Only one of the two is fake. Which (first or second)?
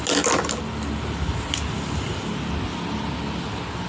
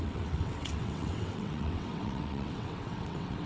second